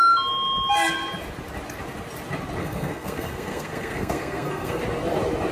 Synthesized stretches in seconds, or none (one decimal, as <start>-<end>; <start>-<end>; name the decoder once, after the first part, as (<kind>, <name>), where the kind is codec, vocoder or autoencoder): 2.6-4.8 (codec, SNAC)